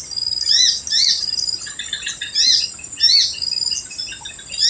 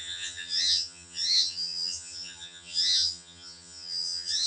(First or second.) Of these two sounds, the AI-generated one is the second